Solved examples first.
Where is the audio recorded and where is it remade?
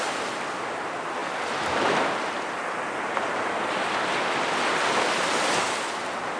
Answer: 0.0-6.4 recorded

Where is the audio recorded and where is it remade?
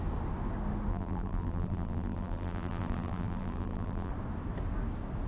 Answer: 0.0-0.9 recorded; 0.9-4.1 remade; 4.1-5.3 recorded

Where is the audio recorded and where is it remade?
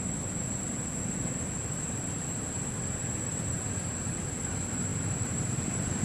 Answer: 0.0-6.0 remade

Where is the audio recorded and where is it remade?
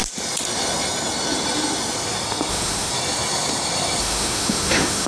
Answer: 0.0-2.5 recorded; 2.5-2.9 remade; 2.9-4.0 recorded; 4.0-5.1 remade